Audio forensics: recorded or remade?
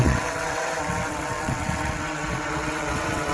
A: remade